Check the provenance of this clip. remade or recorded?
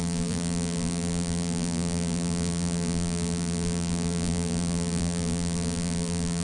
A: remade